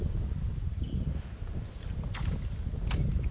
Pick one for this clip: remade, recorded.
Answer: recorded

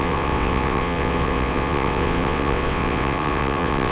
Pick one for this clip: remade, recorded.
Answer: remade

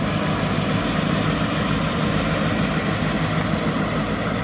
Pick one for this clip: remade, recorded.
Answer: recorded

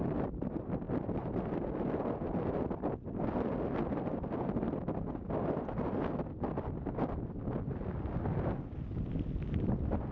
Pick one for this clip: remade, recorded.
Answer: recorded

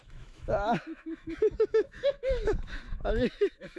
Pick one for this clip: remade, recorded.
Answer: remade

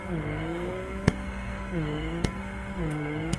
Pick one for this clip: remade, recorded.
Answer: remade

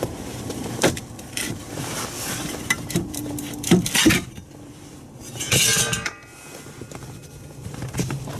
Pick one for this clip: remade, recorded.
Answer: remade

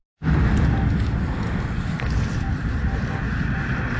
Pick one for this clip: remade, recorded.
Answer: recorded